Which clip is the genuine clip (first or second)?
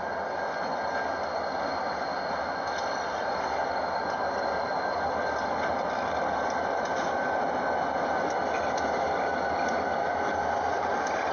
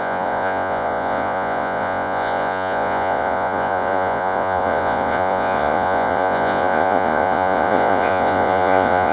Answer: first